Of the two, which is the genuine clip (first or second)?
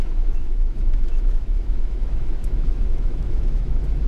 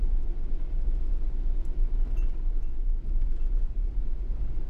second